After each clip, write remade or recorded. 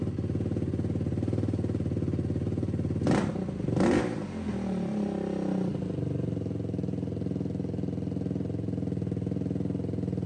recorded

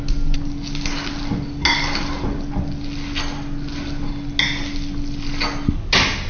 recorded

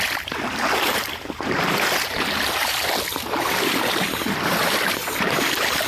remade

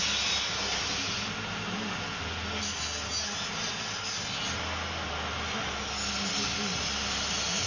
recorded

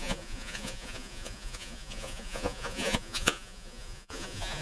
remade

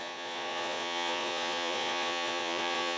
remade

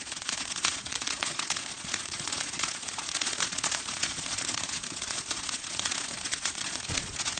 remade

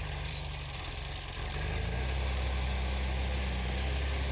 recorded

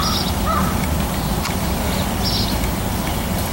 recorded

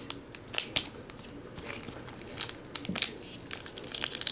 recorded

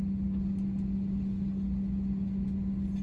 recorded